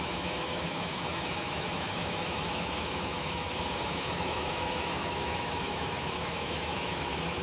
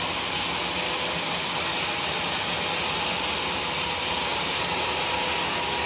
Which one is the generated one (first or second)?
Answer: first